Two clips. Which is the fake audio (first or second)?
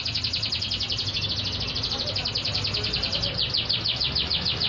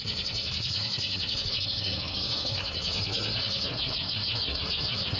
second